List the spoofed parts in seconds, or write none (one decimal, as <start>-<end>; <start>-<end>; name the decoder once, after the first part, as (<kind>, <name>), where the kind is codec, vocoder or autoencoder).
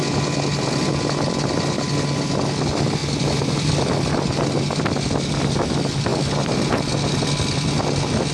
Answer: 3.0-3.9 (vocoder, BigVGAN v2)